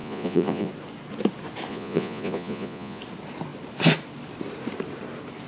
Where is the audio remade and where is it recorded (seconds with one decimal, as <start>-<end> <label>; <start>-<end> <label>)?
0.0-0.7 remade; 0.7-1.7 recorded; 1.7-3.0 remade; 3.0-5.5 recorded